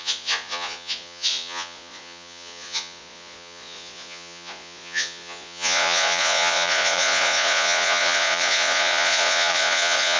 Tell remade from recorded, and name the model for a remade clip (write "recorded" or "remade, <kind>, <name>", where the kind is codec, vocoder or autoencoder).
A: remade, vocoder, Vocos